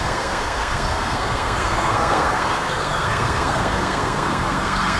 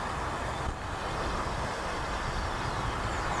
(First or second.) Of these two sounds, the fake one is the first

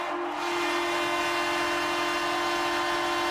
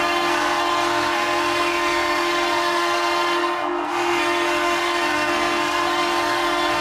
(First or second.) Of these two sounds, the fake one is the second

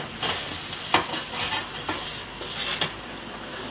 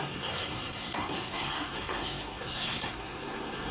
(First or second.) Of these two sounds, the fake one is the second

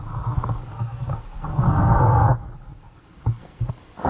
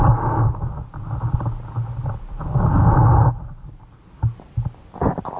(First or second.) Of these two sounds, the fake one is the first